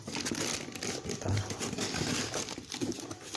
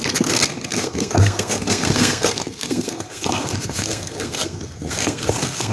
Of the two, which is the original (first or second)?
first